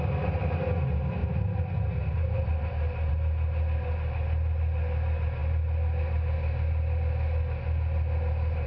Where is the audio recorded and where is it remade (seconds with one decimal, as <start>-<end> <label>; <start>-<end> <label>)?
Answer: 0.0-8.7 recorded